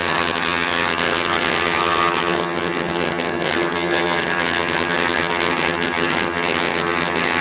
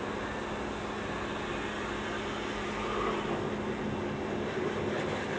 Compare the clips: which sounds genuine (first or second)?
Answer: second